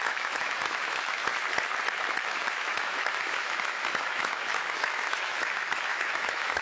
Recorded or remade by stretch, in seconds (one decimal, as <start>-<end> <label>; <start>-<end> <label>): 0.0-1.2 remade; 1.2-2.1 recorded; 2.1-6.6 remade